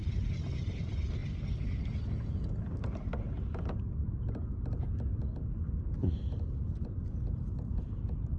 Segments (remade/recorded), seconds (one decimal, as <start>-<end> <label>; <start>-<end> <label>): 0.0-0.6 remade; 0.6-8.4 recorded